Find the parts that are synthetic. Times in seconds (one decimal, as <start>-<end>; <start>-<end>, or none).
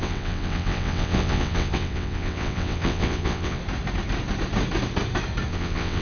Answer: 0.0-3.6; 5.5-6.0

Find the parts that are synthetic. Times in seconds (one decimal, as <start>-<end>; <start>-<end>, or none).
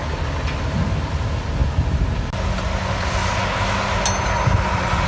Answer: none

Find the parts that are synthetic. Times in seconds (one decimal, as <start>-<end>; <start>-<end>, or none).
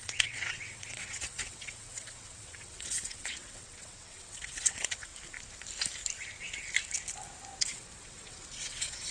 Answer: 0.0-5.1; 7.6-9.1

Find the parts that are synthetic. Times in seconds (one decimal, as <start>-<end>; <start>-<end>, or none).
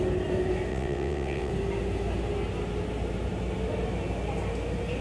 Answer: 0.7-1.5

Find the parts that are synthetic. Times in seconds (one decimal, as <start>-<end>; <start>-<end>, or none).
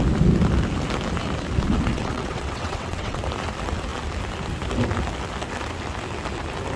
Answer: 1.9-3.2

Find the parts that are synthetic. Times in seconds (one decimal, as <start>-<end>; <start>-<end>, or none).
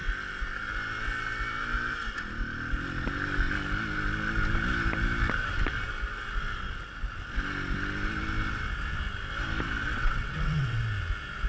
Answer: 9.9-10.8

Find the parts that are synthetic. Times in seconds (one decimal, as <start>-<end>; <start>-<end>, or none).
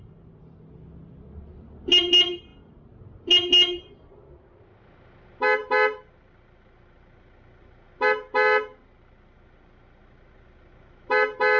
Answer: none